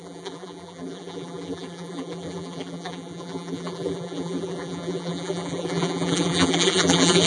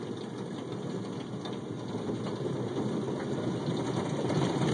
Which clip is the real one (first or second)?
second